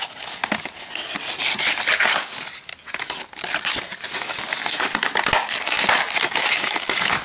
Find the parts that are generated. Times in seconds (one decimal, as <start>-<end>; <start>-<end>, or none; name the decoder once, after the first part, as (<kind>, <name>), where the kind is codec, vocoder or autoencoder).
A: 0.0-0.4 (codec, DAC); 2.1-2.7; 6.3-7.2